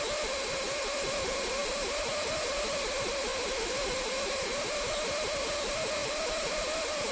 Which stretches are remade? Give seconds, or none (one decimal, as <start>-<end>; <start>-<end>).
none